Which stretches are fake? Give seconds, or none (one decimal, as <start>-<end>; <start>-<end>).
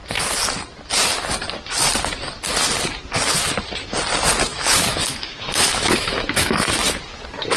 4.5-6.7